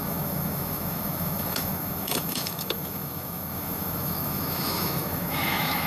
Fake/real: fake